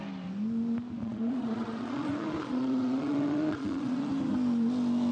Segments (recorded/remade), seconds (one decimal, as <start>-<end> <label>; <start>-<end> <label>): 0.0-1.0 recorded; 1.0-4.1 remade; 4.1-5.1 recorded